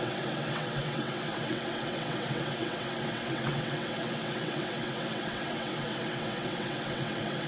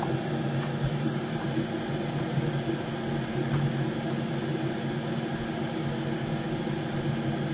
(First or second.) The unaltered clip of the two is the second